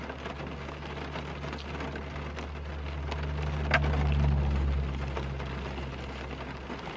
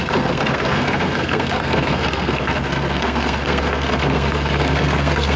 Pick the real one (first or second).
first